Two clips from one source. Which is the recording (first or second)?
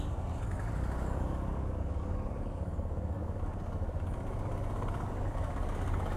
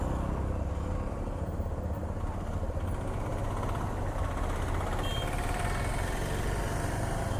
second